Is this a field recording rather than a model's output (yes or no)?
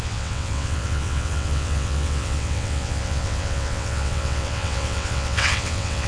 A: no